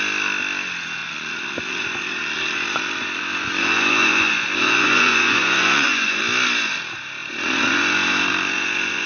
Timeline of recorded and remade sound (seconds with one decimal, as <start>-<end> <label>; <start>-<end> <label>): 0.0-1.0 recorded; 1.0-6.2 remade; 6.2-7.2 recorded; 7.2-9.1 remade